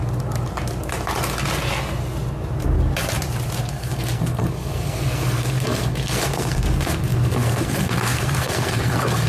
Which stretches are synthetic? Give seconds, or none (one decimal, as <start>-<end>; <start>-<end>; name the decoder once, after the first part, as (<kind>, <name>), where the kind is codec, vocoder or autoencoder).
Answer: 3.7-9.3 (codec, SNAC)